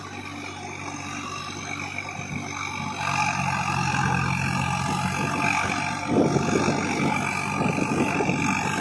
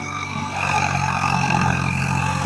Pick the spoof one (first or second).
second